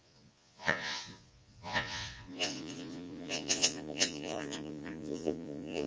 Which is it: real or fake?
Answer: fake